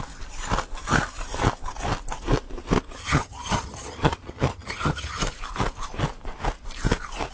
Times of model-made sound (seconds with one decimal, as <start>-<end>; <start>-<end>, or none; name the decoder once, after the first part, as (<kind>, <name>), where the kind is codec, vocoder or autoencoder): 3.0-5.2 (vocoder, HiFi-GAN)

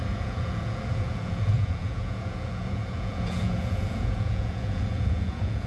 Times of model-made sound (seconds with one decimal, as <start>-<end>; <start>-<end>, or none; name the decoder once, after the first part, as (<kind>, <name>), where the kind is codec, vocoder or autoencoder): 0.0-5.7 (vocoder, Vocos)